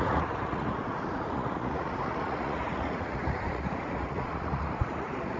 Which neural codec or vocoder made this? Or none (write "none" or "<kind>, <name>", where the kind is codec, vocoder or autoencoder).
vocoder, Vocos